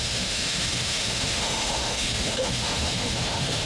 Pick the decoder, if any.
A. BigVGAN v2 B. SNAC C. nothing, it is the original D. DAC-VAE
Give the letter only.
D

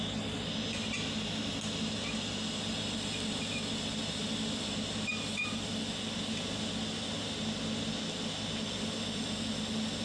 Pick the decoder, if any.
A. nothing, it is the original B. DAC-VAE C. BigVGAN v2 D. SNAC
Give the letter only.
A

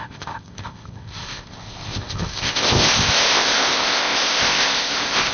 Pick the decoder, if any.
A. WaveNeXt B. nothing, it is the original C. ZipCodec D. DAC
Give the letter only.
C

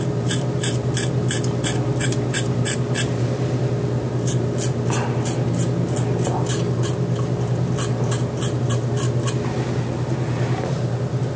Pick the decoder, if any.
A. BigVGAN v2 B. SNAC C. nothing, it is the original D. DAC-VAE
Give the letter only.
C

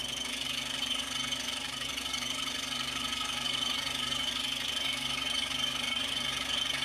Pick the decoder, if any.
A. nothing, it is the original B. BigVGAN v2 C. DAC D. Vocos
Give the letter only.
C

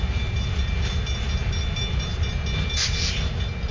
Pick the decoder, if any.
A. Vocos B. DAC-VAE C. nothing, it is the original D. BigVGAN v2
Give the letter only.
C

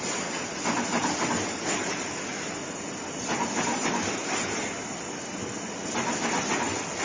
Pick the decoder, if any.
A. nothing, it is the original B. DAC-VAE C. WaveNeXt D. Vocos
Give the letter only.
A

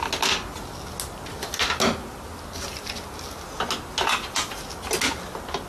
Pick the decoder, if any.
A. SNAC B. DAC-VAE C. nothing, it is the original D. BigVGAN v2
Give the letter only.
C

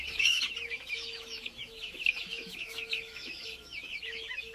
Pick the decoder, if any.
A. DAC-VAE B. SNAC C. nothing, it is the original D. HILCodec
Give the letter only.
A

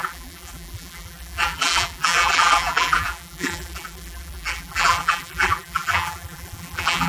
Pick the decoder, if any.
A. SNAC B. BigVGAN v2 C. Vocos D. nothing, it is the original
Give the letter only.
B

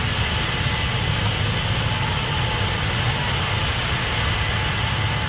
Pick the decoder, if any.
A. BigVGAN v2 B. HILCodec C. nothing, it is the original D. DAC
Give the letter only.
C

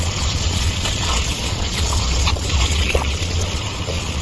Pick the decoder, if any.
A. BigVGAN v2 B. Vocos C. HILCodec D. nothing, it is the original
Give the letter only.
B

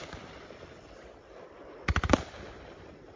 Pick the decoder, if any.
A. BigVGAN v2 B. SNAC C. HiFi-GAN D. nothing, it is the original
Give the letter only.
D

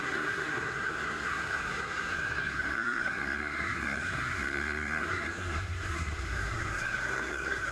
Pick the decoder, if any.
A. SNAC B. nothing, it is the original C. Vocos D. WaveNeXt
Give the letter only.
A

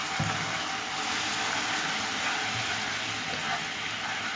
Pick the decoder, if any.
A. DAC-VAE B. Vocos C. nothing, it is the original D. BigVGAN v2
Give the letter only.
C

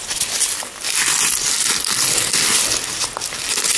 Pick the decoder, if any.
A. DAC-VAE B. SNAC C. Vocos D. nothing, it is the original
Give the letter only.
D